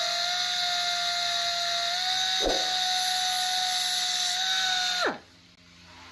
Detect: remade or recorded recorded